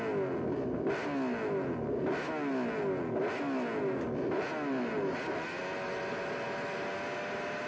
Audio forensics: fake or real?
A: real